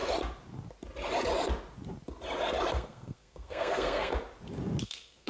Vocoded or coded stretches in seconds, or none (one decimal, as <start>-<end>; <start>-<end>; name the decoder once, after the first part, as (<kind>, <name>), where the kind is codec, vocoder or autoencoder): 2.7-4.1 (codec, SNAC); 4.8-5.3